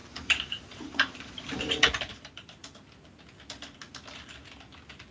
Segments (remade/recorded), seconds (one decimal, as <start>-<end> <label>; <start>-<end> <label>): 0.0-1.7 remade; 1.7-2.1 recorded; 2.1-2.6 remade; 2.6-5.1 recorded